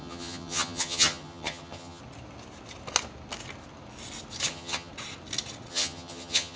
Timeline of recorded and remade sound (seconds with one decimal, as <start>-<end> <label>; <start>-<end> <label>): 0.0-2.0 remade; 2.0-4.5 recorded; 4.5-4.9 remade; 4.9-5.7 recorded; 5.7-6.6 remade